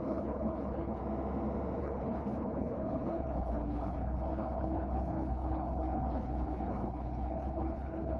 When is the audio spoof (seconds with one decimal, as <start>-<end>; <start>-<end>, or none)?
0.0-1.0; 1.8-8.2